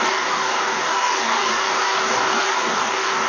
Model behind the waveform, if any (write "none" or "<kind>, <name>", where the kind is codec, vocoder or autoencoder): codec, DAC